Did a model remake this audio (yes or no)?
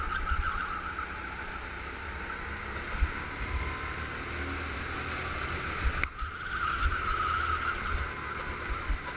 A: no